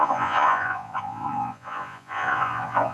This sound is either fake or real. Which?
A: fake